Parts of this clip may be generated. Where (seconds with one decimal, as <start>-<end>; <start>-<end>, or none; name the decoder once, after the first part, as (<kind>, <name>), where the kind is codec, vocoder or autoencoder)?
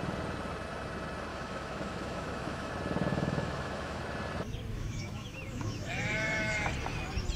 1.3-2.7 (autoencoder, DAC-VAE); 3.1-4.0; 4.7-6.7